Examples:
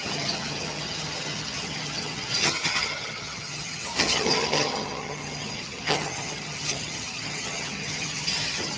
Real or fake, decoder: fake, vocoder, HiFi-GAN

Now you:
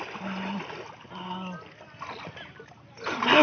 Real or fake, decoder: real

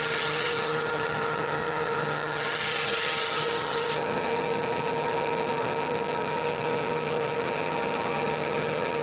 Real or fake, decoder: fake, vocoder, HiFi-GAN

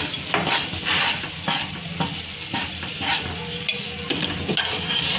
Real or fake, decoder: real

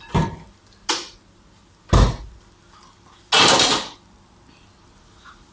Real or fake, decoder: real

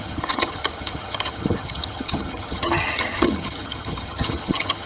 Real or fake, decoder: fake, vocoder, HiFi-GAN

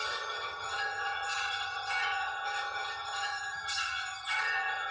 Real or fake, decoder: fake, vocoder, HiFi-GAN